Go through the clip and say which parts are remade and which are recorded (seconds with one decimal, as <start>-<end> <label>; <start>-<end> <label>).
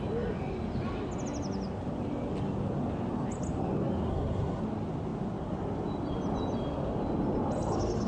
0.0-4.1 recorded; 4.1-4.6 remade; 4.6-8.1 recorded